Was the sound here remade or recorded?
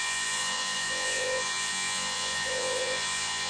remade